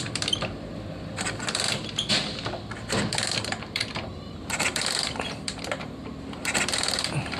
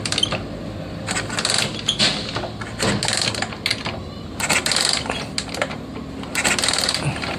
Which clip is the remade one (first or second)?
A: first